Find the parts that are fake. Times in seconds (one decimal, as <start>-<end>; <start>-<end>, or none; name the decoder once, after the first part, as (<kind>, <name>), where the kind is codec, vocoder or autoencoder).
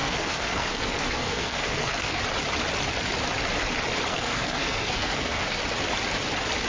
0.0-2.2 (codec, SNAC); 4.1-5.6